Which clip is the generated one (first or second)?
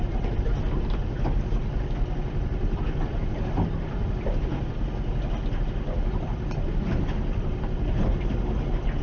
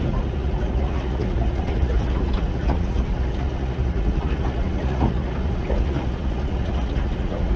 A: second